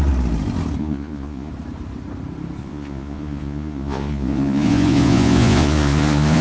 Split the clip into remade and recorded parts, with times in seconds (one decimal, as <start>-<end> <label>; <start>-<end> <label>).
0.0-0.8 recorded; 0.8-1.5 remade; 1.5-2.6 recorded; 2.6-6.4 remade